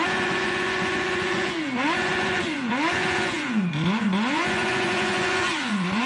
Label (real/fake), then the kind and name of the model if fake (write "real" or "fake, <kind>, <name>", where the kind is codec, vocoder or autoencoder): fake, vocoder, Vocos